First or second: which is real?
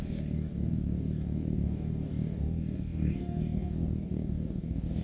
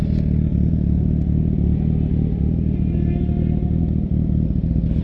second